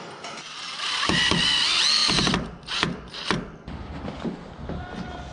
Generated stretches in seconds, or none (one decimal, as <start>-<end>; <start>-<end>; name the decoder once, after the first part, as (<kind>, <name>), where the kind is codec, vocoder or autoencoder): 2.0-4.0 (vocoder, BigVGAN v2)